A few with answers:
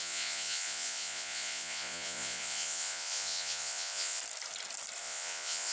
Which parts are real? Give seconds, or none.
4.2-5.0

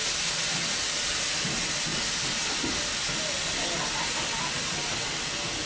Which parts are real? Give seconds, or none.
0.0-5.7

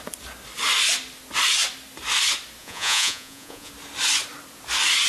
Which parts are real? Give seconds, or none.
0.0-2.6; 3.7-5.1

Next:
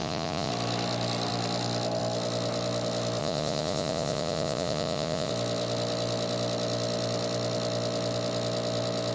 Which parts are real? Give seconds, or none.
0.5-3.2; 5.3-9.1

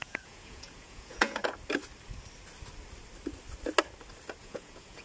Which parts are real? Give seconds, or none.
1.4-4.4